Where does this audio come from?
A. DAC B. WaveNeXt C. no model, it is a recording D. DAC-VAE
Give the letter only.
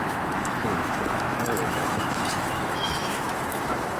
D